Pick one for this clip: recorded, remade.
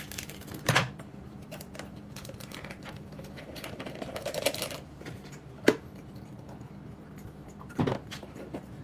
remade